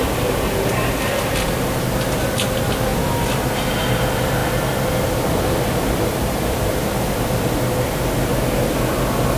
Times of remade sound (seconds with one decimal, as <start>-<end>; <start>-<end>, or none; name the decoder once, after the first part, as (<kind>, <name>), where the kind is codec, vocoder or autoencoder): 2.9-3.6 (vocoder, BigVGAN v2); 4.4-7.5